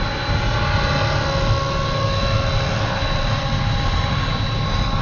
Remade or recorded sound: recorded